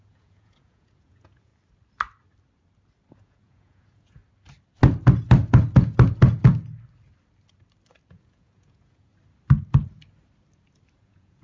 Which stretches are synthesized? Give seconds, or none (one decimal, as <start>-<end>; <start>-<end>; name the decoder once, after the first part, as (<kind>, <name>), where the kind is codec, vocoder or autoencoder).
0.0-1.5 (vocoder, Vocos); 3.1-4.2; 8.1-9.1; 11.0-11.4